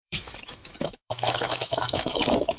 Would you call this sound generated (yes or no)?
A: yes